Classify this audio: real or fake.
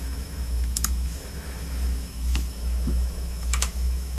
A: fake